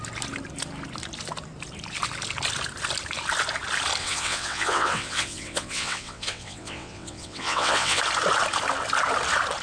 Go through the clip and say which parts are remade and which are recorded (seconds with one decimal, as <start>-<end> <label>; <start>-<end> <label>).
0.0-4.0 recorded; 4.0-8.0 remade; 8.0-9.6 recorded